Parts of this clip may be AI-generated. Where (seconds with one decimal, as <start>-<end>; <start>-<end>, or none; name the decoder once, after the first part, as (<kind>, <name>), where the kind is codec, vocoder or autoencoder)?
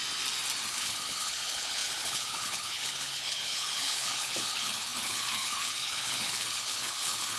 0.7-7.4 (codec, HILCodec)